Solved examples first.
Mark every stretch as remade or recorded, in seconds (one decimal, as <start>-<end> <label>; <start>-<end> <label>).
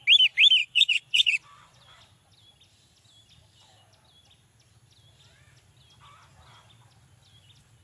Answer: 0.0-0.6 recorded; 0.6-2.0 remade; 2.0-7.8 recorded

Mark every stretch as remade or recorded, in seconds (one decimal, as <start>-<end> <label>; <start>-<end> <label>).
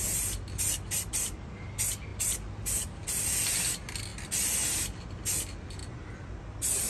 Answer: 0.0-6.9 recorded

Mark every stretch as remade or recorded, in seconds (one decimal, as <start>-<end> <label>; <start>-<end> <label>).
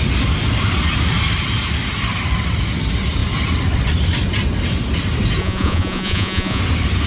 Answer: 0.0-5.4 recorded; 5.4-6.6 remade; 6.6-7.1 recorded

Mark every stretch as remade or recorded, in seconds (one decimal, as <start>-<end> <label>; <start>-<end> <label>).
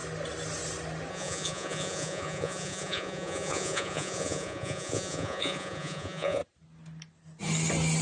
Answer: 0.0-1.1 recorded; 1.1-6.4 remade; 6.4-8.0 recorded